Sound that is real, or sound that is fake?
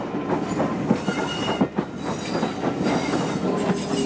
real